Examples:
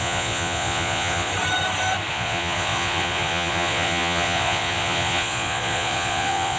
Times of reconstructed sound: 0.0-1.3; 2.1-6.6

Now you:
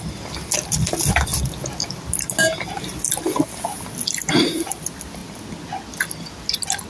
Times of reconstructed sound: none

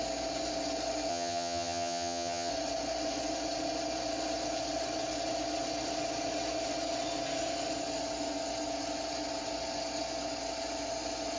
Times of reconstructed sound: 1.1-2.5

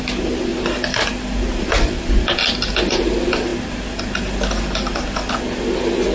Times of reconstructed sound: none

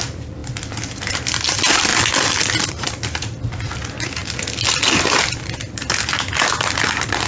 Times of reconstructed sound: 0.0-1.9; 2.7-3.8